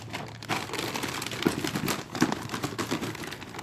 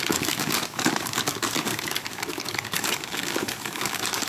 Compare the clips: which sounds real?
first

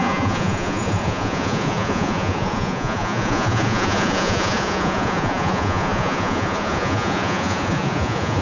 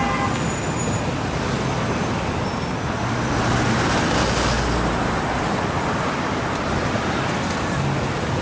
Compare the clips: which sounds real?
second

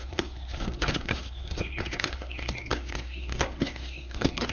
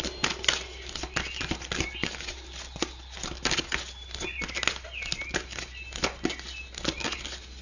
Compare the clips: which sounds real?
second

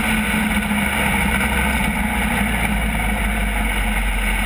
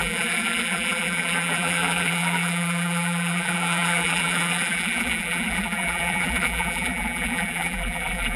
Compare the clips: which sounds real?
first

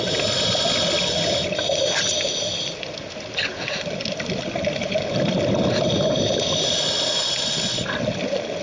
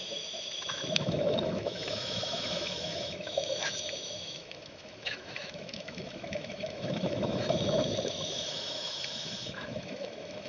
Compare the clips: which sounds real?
first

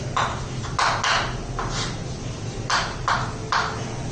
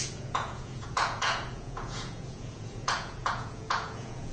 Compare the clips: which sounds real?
first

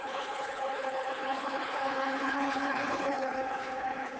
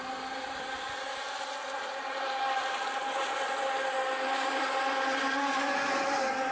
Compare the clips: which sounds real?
second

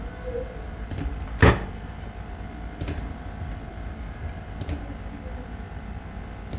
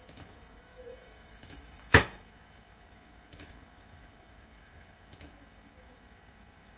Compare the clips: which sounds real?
first